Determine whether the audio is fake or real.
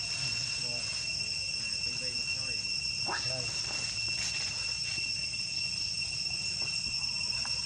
real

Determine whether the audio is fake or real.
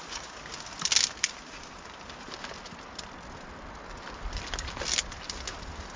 real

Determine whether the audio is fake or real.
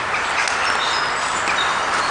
real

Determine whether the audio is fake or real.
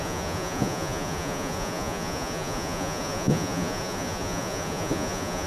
fake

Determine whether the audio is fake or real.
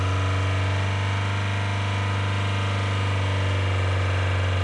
real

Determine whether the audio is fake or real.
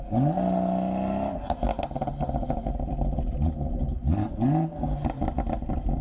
real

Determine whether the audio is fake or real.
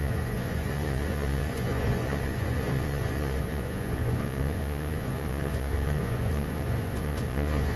fake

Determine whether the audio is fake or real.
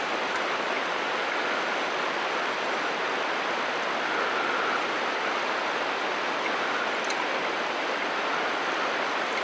real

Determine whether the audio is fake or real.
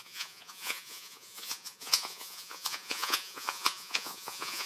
fake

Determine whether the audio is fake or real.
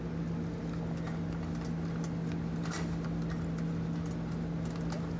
real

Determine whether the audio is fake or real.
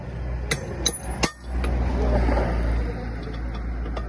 real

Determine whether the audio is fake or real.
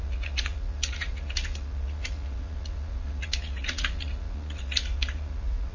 fake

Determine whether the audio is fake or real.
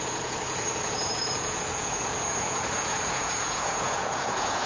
fake